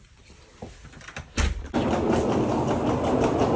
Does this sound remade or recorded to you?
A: recorded